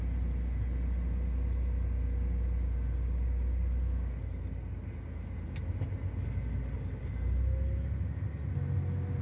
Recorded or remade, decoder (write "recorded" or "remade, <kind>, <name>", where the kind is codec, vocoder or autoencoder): recorded